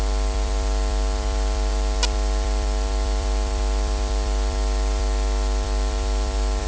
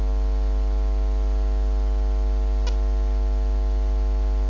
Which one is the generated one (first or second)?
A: first